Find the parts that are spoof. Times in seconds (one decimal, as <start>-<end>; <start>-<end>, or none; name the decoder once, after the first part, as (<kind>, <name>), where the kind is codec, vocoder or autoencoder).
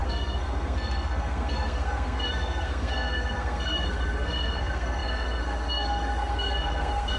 0.0-7.2 (codec, SNAC)